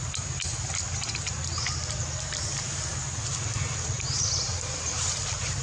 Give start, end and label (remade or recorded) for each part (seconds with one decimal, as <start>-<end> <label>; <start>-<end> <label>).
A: 0.0-5.6 recorded